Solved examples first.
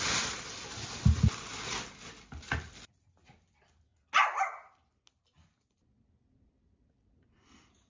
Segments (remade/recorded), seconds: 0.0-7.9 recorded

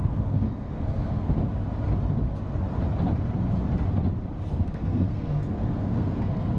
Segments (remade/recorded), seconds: 0.0-1.4 remade; 1.4-4.5 recorded; 4.5-6.6 remade